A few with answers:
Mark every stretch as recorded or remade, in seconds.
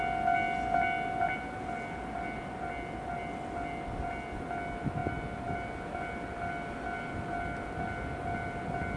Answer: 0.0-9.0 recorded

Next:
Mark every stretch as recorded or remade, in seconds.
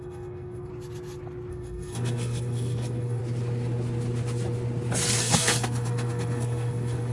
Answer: 0.0-0.7 remade; 0.7-1.5 recorded; 1.5-3.2 remade; 3.2-5.2 recorded; 5.2-7.1 remade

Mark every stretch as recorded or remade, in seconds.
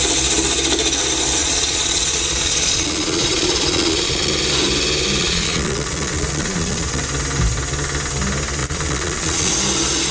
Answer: 0.0-1.4 recorded; 1.4-4.3 remade; 4.3-5.2 recorded; 5.2-7.0 remade; 7.0-8.6 recorded; 8.6-9.5 remade; 9.5-10.1 recorded